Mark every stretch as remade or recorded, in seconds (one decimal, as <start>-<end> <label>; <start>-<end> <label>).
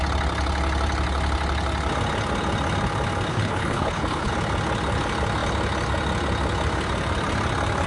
0.0-3.3 recorded; 3.3-4.3 remade; 4.3-7.9 recorded